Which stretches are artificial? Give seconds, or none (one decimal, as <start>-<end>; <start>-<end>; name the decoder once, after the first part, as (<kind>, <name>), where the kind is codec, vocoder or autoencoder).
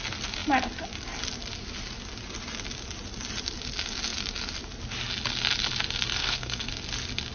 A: 6.2-6.7 (codec, SNAC)